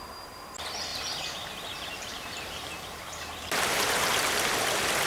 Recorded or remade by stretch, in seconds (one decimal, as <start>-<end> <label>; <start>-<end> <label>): 0.0-0.9 recorded; 0.9-4.0 remade; 4.0-5.1 recorded